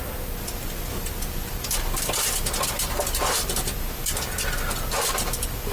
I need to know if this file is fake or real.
real